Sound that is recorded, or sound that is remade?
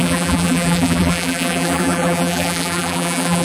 remade